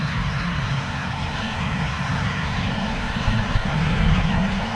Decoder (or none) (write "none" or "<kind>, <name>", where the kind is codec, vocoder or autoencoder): codec, SNAC